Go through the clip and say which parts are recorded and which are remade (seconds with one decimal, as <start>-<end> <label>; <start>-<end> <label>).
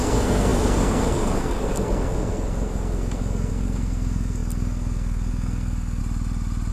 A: 0.0-6.0 remade; 6.0-6.7 recorded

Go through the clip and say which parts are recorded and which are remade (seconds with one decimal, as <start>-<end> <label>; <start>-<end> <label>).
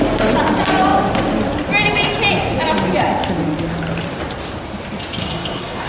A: 0.0-5.2 recorded; 5.2-5.9 remade